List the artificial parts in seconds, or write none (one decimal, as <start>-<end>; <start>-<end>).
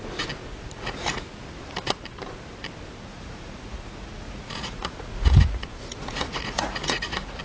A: 0.5-1.2; 3.1-7.4